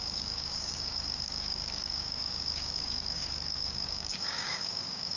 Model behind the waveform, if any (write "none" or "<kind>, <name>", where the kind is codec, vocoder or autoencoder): codec, DAC